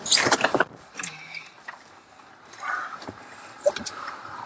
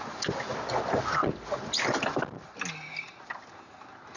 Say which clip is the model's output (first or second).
first